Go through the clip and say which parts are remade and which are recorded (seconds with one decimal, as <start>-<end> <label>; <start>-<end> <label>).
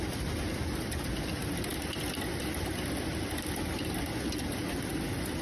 0.0-5.4 recorded